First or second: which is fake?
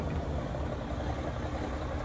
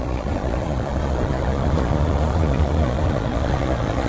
second